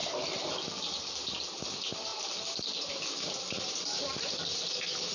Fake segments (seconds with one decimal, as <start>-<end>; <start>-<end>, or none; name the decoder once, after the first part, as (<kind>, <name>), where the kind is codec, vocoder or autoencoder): none